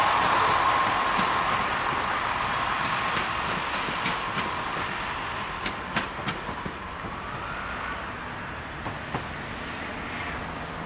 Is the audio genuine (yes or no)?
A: yes